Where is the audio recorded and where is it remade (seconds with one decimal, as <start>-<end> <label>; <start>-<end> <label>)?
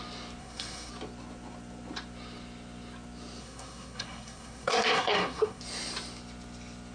0.0-0.4 recorded; 0.4-0.9 remade; 0.9-3.4 recorded; 3.4-5.6 remade; 5.6-6.9 recorded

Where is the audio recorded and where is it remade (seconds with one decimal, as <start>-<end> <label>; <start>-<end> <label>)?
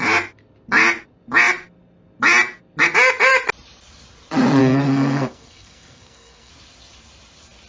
0.0-4.6 recorded; 4.6-6.5 remade; 6.5-7.7 recorded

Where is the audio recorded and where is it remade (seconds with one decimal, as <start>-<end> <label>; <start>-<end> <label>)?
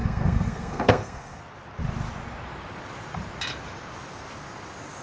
0.0-1.4 remade; 1.4-5.0 recorded